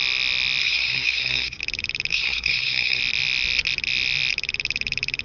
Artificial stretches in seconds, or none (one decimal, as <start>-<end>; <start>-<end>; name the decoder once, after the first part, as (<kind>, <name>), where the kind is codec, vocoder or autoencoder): 0.6-1.6 (codec, SNAC); 2.1-3.0